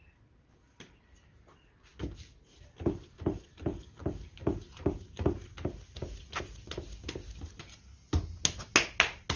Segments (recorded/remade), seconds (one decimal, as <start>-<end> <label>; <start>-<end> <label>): 0.0-9.4 recorded